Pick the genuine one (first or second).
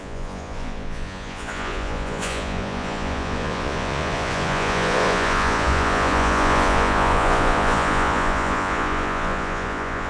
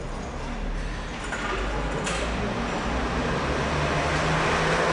second